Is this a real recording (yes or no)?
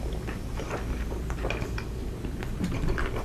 yes